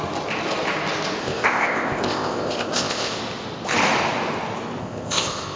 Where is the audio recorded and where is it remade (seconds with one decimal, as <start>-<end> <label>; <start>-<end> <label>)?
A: 0.0-1.2 recorded; 1.2-3.2 remade; 3.2-4.8 recorded; 4.8-5.6 remade